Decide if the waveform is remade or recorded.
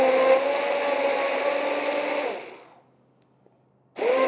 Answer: recorded